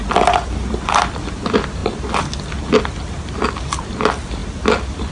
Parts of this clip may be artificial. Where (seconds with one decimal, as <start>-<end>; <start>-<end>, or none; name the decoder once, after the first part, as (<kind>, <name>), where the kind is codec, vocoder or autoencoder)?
none